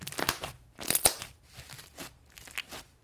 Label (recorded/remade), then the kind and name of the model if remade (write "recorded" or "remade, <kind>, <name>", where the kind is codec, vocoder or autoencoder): recorded